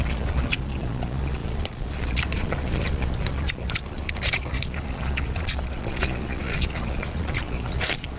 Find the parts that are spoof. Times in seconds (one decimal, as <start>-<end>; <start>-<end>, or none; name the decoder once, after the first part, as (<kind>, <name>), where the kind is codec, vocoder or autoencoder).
0.0-8.2 (vocoder, Vocos)